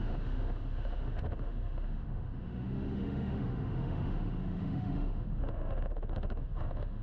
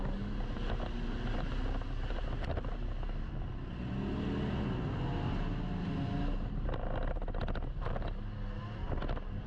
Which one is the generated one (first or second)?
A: first